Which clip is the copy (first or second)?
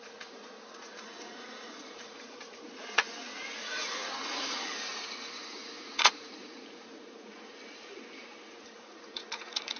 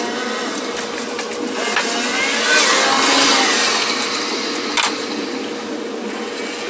first